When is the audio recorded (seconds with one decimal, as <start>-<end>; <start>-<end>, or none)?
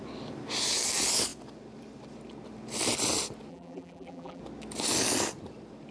0.0-3.5; 4.4-5.9